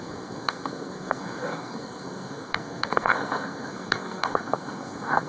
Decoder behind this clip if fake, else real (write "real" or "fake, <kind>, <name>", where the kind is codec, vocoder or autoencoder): fake, codec, SNAC